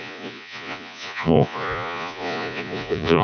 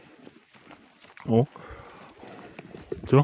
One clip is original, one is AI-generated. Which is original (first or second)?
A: second